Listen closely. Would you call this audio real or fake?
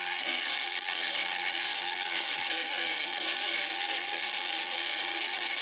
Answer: fake